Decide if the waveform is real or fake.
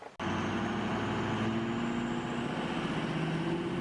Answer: real